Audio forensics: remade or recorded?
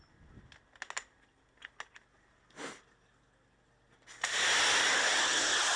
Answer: recorded